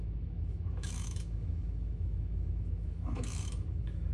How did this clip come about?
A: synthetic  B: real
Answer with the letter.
A